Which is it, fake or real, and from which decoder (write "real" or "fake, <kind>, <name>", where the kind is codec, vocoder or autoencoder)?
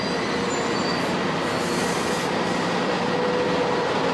real